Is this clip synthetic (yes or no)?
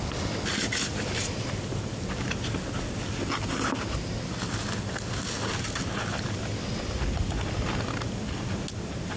no